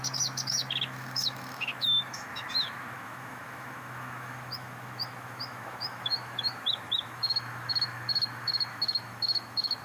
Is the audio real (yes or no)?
no